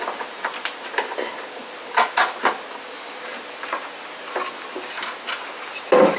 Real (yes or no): yes